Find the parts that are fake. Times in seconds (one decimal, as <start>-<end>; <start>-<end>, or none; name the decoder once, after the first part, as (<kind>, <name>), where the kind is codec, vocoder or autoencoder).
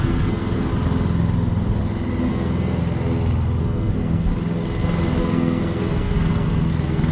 0.0-0.7 (codec, SNAC); 2.3-2.8; 3.6-4.3; 5.2-7.1